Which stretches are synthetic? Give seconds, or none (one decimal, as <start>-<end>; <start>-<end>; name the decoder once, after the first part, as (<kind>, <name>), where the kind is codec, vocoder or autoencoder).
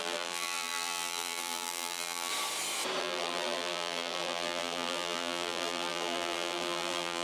0.0-2.3 (vocoder, BigVGAN v2); 3.0-7.2